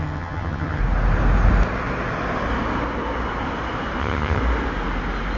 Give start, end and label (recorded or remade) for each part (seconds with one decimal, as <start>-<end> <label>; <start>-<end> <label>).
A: 0.0-0.8 remade; 0.8-4.0 recorded; 4.0-4.4 remade; 4.4-5.4 recorded